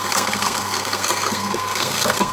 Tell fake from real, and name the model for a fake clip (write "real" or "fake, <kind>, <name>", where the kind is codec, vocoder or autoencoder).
fake, codec, SNAC